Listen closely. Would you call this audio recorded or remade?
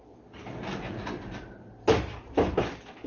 recorded